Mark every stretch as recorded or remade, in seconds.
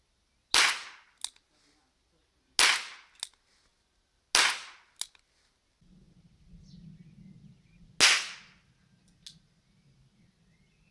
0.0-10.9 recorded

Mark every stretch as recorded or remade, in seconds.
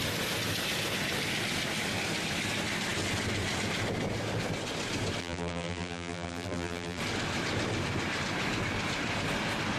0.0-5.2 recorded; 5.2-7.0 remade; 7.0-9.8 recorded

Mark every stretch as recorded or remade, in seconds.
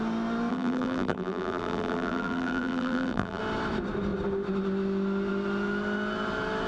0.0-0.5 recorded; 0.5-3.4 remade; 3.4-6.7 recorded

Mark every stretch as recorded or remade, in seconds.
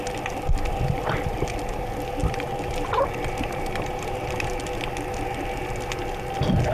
0.0-2.2 recorded; 2.2-4.6 remade; 4.6-6.7 recorded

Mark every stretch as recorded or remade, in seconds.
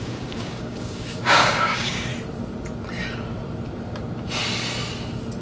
0.0-2.1 remade; 2.1-5.4 recorded